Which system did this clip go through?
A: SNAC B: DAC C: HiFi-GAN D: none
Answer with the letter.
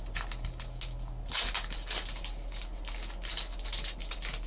D